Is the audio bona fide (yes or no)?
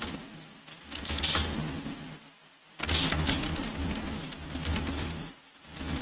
yes